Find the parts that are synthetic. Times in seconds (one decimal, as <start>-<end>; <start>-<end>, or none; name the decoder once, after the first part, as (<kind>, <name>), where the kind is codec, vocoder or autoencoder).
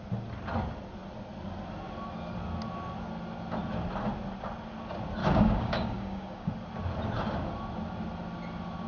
5.2-6.5 (codec, DAC)